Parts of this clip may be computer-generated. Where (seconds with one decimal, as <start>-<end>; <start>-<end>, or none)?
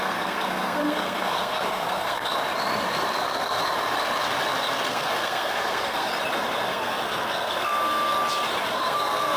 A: 0.0-2.3; 3.2-3.6; 4.9-6.1; 6.7-8.1; 8.6-9.4